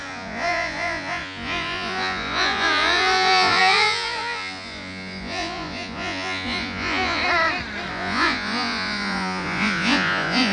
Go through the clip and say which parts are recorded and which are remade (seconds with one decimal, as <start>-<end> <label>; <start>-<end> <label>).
0.0-7.2 remade; 7.2-7.9 recorded; 7.9-10.5 remade